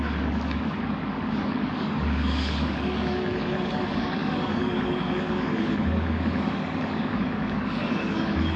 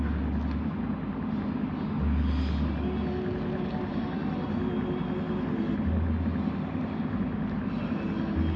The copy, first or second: first